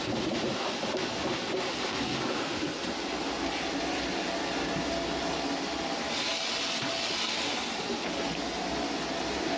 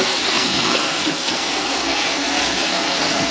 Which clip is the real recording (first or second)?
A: first